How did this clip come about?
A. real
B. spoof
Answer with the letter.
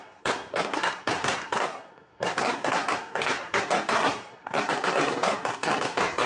B